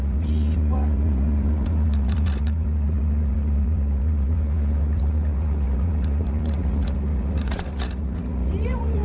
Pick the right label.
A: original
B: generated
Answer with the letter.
B